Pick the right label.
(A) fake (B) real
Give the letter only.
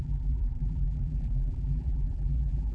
A